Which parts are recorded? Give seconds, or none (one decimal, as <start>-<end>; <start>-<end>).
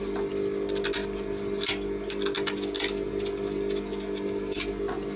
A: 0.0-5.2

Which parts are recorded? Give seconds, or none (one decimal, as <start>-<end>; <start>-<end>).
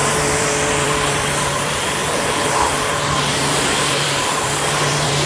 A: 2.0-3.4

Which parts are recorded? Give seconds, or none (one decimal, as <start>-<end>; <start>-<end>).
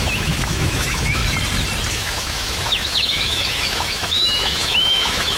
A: 1.2-1.9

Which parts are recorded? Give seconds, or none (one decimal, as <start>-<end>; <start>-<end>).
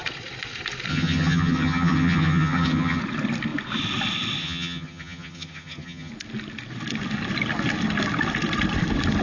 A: 0.0-0.9; 3.0-4.4; 6.1-9.2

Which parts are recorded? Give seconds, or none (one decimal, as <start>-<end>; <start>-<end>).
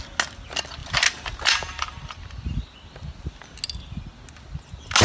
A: 0.0-5.0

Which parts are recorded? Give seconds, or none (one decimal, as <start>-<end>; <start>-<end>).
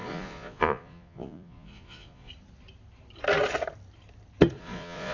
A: 2.3-4.6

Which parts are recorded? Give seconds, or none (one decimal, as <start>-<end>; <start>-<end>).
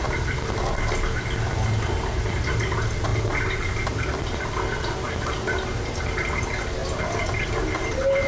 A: 0.0-8.3